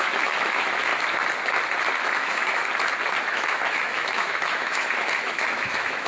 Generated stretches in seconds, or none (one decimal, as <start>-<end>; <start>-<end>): 0.0-0.9; 2.0-2.6; 3.2-6.1